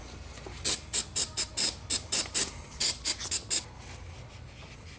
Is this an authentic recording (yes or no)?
yes